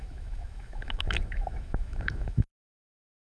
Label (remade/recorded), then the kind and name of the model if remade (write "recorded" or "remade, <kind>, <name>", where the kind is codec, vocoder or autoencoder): remade, autoencoder, DAC-VAE